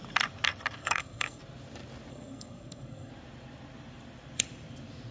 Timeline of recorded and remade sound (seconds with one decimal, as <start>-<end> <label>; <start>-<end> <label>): 0.0-0.8 recorded; 0.8-1.4 remade; 1.4-2.1 recorded; 2.1-3.1 remade; 3.1-5.1 recorded